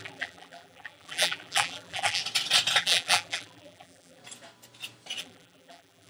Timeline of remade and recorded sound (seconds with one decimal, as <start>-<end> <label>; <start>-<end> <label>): 0.0-2.2 remade; 2.2-2.8 recorded; 2.8-4.2 remade; 4.2-5.2 recorded; 5.2-6.1 remade